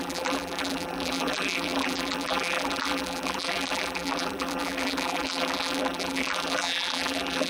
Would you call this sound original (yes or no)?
no